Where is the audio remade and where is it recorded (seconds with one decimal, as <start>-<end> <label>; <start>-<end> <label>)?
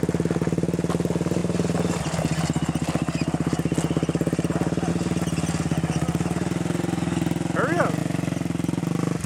0.0-9.3 recorded